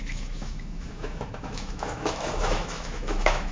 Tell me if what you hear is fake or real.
fake